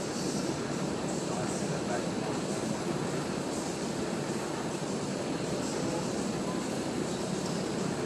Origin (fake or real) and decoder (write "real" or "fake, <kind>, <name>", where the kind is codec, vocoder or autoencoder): real